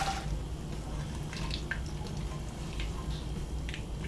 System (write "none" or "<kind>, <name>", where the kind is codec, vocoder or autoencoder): none